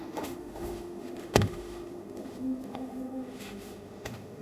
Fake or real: fake